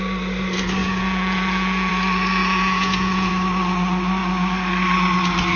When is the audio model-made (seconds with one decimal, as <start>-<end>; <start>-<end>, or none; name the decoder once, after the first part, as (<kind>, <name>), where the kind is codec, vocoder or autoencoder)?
0.8-1.9 (vocoder, Vocos); 2.4-3.3